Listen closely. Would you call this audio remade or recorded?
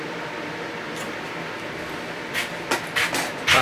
recorded